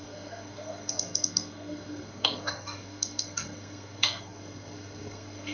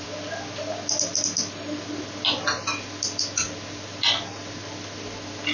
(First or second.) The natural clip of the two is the second